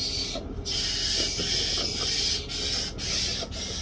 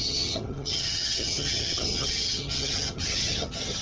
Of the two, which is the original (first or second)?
first